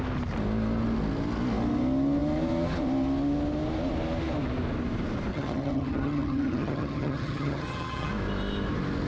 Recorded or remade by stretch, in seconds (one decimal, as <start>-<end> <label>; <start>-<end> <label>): 0.0-5.3 recorded; 5.3-8.1 remade; 8.1-9.1 recorded